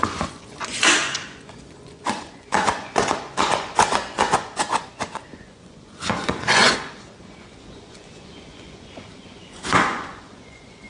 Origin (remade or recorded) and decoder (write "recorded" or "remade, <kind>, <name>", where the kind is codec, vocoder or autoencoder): remade, vocoder, Vocos